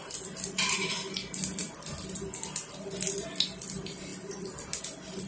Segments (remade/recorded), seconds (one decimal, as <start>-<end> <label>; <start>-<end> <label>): 0.0-5.3 recorded